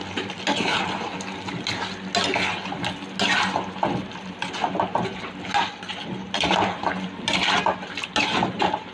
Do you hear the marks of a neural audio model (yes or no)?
no